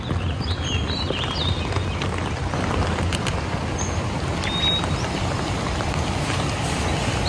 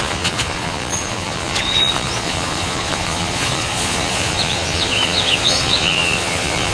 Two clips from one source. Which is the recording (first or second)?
first